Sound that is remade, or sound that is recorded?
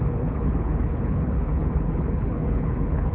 remade